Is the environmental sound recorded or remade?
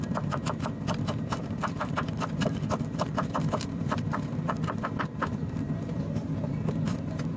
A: remade